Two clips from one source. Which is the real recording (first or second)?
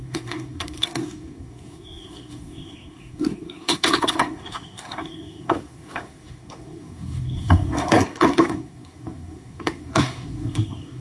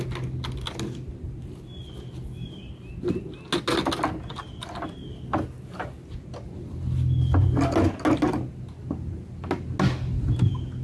second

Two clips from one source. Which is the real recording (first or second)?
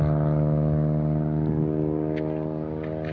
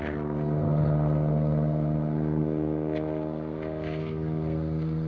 first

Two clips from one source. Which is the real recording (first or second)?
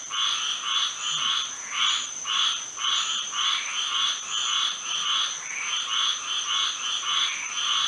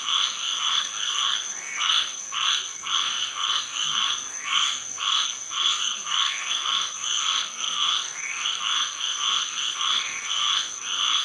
first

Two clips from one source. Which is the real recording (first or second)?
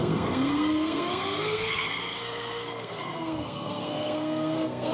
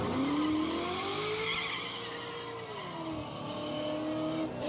second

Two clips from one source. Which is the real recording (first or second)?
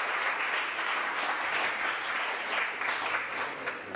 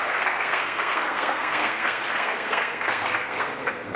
first